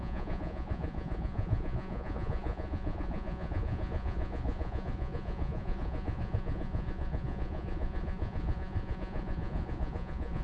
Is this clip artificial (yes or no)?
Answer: yes